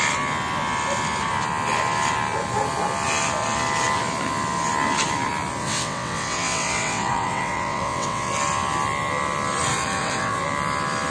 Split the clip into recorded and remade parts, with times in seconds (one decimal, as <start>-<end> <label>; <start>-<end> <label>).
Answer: 0.0-5.6 recorded; 5.6-8.3 remade; 8.3-9.7 recorded; 9.7-10.4 remade; 10.4-11.1 recorded